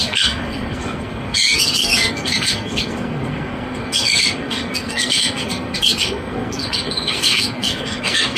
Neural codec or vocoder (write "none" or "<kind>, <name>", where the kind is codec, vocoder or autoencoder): codec, SNAC